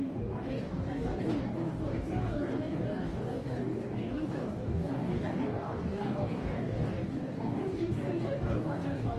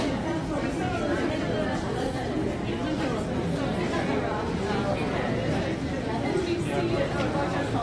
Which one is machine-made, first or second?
first